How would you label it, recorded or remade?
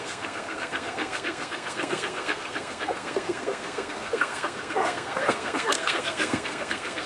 remade